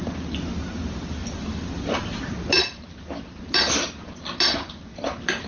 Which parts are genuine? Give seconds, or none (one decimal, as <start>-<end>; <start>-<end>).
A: 0.0-1.2; 2.1-4.9